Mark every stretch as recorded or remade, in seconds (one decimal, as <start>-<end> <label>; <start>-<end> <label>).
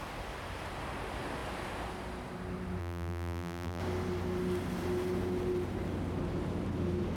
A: 0.0-2.8 recorded; 2.8-3.8 remade; 3.8-7.2 recorded